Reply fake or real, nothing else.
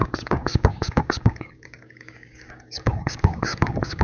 fake